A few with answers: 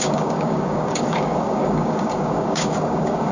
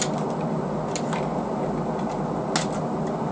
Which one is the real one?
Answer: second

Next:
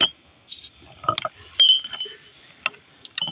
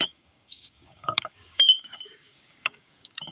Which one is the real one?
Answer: first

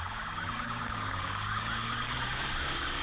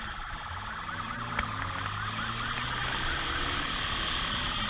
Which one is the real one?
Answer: second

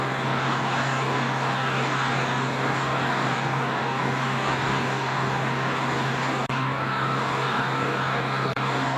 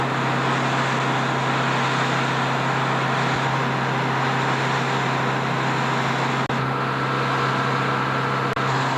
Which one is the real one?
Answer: second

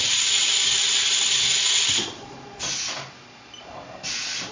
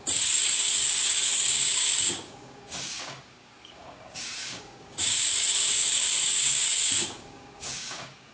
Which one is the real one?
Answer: first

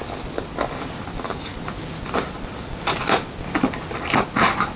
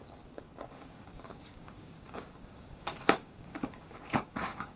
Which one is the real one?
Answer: first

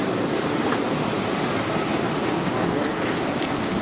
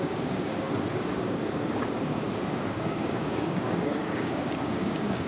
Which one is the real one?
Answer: first